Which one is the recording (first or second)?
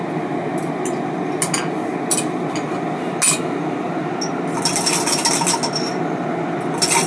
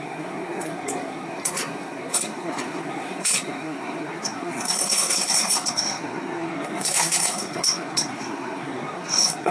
first